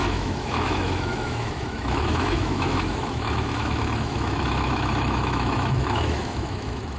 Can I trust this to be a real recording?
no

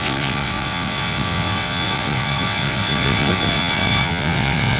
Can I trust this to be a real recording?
no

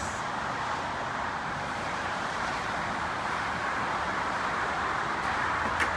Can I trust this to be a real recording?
yes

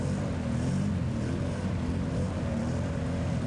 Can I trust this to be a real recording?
yes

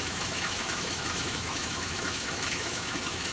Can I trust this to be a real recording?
no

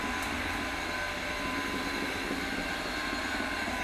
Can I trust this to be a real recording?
yes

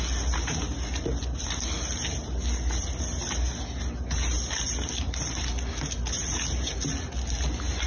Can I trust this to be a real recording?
yes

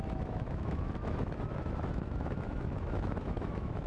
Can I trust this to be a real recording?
no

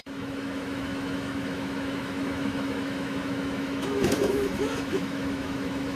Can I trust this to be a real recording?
no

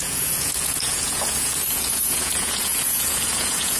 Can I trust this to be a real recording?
no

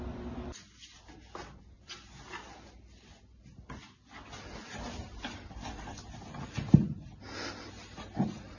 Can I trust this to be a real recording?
yes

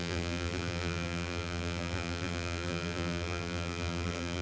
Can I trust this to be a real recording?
no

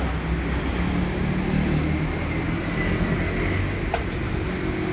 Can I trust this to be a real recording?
yes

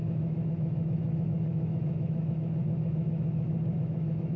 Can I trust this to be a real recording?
no